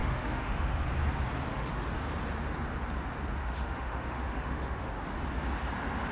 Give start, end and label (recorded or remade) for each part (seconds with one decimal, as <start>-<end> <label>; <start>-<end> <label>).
0.0-0.8 remade; 0.8-1.5 recorded; 1.5-2.0 remade; 2.0-3.4 recorded; 3.4-4.9 remade; 4.9-6.1 recorded